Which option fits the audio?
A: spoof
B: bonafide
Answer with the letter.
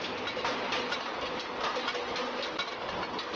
B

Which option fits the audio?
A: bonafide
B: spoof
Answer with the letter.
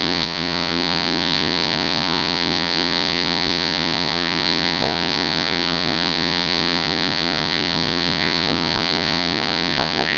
B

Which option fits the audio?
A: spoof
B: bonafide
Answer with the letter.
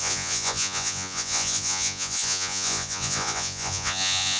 A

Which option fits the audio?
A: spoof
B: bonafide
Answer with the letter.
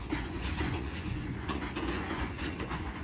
A